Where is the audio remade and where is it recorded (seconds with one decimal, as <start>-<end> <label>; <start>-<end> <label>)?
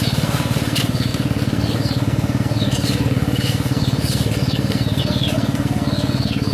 0.0-6.5 remade